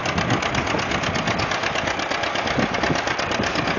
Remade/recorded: recorded